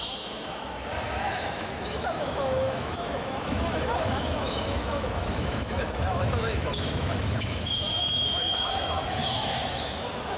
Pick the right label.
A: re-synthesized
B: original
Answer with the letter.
A